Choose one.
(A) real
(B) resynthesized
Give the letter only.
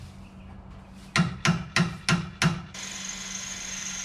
A